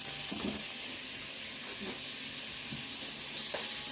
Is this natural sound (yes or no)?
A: yes